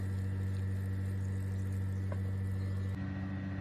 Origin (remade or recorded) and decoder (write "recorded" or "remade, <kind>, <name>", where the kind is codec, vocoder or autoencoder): recorded